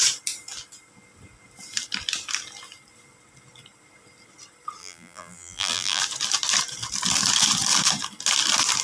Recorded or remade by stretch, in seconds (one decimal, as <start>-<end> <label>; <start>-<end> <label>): 0.0-4.8 recorded; 4.8-6.0 remade; 6.0-8.8 recorded